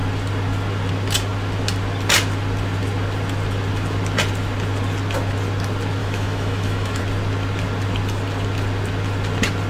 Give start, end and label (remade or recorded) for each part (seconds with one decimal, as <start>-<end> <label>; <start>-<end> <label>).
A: 0.0-6.0 recorded; 6.0-7.0 remade; 7.0-9.7 recorded